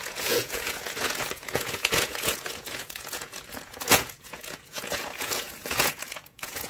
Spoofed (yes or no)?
yes